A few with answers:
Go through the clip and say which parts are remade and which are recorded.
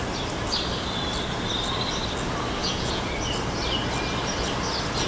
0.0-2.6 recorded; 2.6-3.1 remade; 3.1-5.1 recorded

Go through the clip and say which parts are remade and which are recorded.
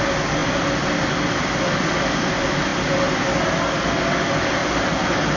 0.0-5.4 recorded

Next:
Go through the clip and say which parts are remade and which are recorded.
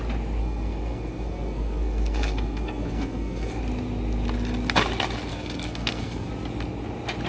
0.0-0.4 recorded; 0.4-3.6 remade; 3.6-5.3 recorded; 5.3-6.3 remade; 6.3-7.3 recorded